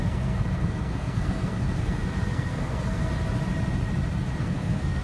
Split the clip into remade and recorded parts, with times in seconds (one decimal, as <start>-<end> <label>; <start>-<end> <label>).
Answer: 0.0-3.1 remade; 3.1-4.4 recorded; 4.4-5.0 remade